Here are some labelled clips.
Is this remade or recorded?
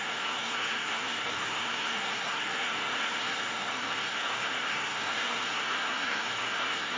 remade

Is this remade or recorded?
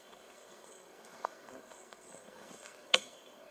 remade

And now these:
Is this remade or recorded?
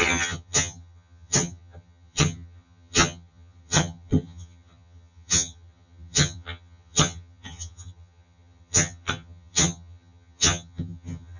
remade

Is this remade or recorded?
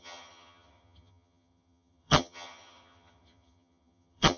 remade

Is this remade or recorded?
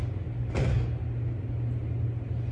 recorded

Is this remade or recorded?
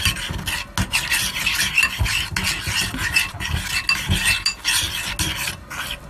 recorded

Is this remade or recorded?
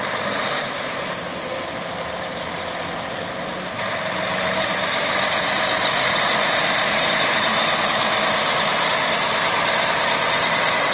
remade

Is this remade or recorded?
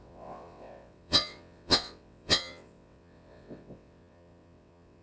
remade